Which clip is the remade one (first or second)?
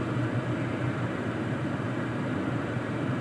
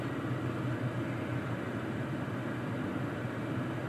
first